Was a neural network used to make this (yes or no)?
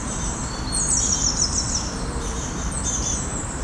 no